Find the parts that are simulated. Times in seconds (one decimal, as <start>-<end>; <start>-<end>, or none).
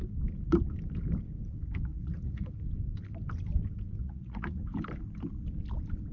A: 1.9-2.5; 4.0-4.6